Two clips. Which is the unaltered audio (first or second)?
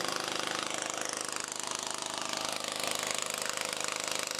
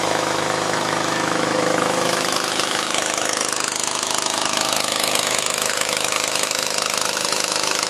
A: first